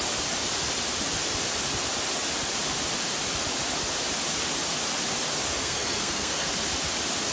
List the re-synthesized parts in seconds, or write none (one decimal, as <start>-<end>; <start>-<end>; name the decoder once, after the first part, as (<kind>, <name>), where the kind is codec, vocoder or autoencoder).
5.6-6.5 (codec, SNAC)